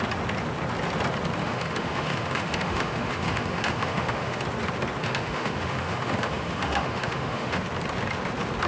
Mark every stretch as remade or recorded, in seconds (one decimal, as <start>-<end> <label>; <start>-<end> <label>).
0.0-1.4 recorded; 1.4-4.4 remade; 4.4-5.0 recorded; 5.0-7.6 remade; 7.6-8.7 recorded